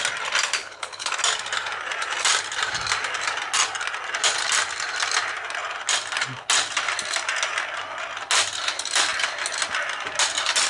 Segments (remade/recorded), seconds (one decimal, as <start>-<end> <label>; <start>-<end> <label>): 0.0-0.6 recorded; 0.6-1.1 remade; 1.1-10.7 recorded